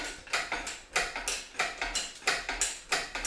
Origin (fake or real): real